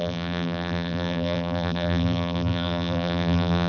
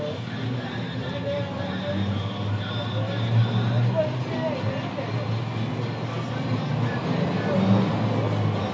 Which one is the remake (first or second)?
first